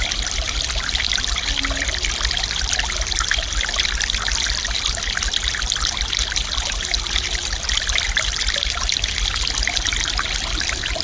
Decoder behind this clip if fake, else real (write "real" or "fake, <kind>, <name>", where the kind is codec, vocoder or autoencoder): real